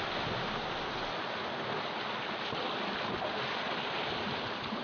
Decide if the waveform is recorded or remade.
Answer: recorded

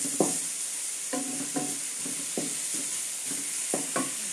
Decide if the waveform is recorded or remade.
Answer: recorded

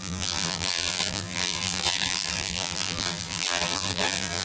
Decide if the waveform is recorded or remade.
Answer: remade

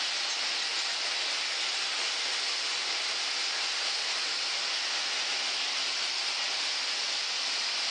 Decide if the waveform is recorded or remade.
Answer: recorded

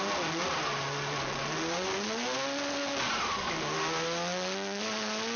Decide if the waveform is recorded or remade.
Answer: recorded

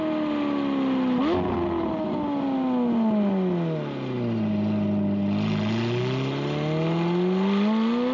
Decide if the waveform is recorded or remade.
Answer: recorded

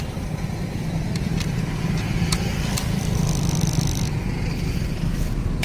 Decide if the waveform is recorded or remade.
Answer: remade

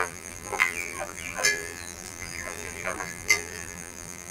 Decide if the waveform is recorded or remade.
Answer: remade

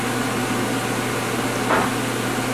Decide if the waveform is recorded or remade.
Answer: recorded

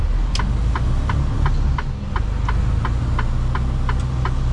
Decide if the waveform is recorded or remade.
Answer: recorded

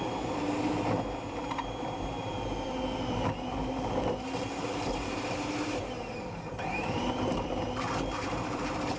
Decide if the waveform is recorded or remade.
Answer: remade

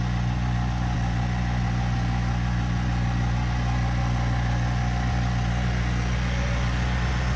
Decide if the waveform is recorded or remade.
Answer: recorded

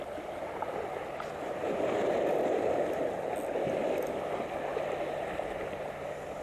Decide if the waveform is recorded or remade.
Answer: recorded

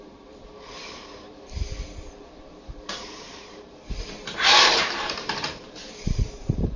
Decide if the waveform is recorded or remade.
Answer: remade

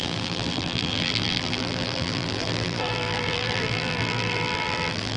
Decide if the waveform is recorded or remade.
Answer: remade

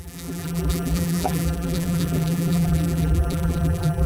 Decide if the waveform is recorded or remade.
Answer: remade